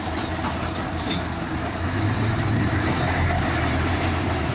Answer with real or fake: fake